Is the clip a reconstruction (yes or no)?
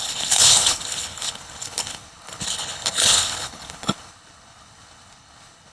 yes